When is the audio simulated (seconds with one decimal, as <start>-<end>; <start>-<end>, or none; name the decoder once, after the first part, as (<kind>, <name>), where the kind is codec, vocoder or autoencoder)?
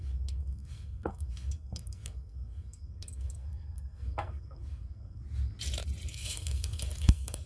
0.0-5.2 (codec, SNAC); 6.1-7.5